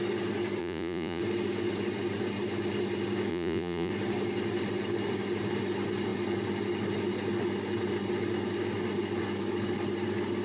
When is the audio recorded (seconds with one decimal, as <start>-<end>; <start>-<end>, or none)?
0.0-0.6; 1.2-3.3; 3.9-10.4